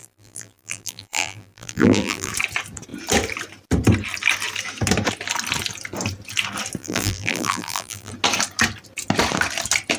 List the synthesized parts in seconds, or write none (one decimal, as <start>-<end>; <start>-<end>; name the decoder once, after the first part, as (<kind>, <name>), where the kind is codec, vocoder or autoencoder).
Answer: 0.0-2.3 (vocoder, BigVGAN v2); 6.8-8.1